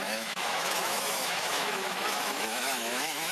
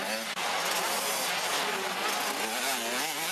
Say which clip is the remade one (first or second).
first